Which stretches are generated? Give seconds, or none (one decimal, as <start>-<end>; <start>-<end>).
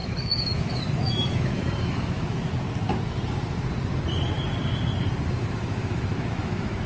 0.0-2.4; 5.4-6.9